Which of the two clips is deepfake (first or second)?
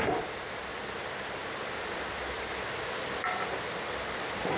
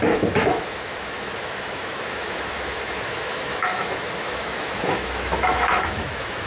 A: second